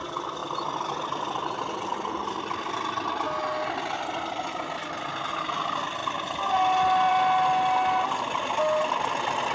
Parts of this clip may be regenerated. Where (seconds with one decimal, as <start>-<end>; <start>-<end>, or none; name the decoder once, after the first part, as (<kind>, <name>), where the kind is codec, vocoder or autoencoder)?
none